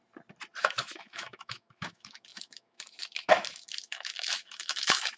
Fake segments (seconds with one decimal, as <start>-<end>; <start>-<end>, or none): 0.6-5.2